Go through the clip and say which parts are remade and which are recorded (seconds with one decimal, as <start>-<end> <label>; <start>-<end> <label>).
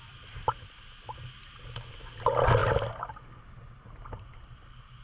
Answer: 0.0-5.0 recorded